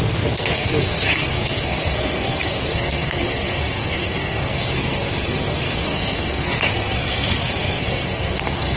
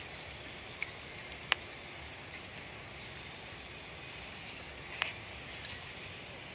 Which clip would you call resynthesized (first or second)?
first